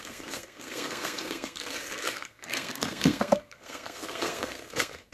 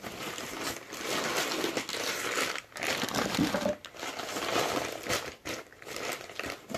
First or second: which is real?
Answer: second